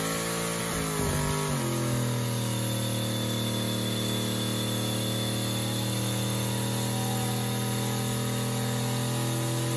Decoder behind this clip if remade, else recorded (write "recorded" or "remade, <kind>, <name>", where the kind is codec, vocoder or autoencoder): recorded